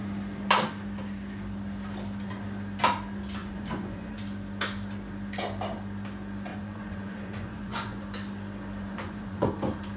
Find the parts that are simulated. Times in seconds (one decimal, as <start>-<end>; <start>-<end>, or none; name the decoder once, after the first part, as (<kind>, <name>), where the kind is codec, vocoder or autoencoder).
3.4-4.2 (vocoder, Vocos); 6.5-8.0; 8.8-9.5